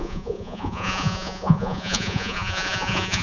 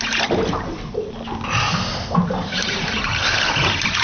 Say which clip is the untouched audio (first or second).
second